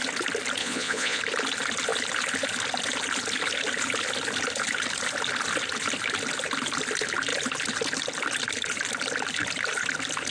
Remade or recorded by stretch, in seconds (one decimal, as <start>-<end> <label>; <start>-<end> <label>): 0.0-0.6 recorded; 0.6-1.2 remade; 1.2-10.3 recorded